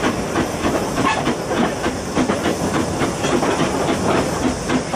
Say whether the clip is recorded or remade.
remade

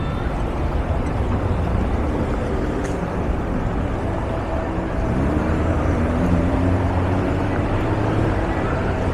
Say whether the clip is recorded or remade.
remade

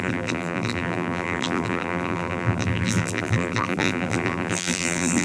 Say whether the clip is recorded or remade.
remade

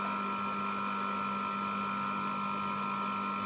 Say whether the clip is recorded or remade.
recorded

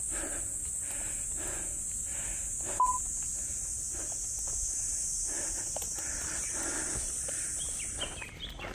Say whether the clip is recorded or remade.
recorded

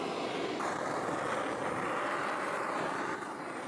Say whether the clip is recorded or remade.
recorded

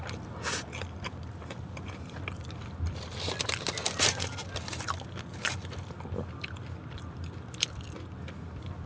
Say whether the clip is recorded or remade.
recorded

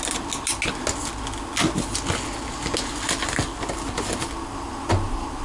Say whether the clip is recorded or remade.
recorded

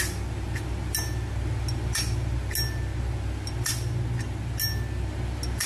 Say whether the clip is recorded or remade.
recorded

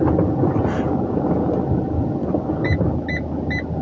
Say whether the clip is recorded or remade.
recorded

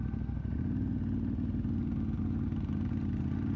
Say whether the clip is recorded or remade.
recorded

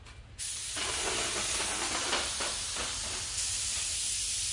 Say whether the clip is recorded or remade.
recorded